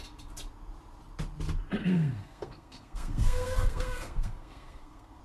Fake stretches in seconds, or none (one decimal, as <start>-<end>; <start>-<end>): 1.8-5.2